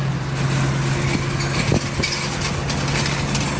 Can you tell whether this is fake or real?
real